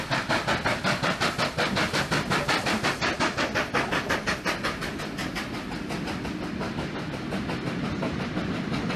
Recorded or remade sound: recorded